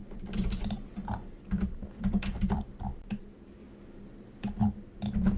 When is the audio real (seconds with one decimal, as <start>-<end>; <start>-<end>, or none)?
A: 3.2-5.4